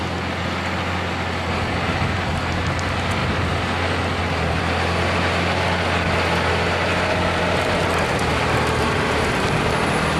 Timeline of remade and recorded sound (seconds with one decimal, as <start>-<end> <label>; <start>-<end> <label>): 0.0-10.2 recorded